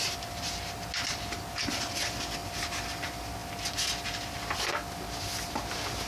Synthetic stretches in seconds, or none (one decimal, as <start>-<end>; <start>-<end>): none